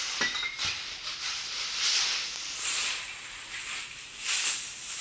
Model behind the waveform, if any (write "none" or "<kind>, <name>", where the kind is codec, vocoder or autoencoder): none